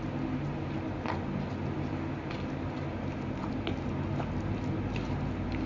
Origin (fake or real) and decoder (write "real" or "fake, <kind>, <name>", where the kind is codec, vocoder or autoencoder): real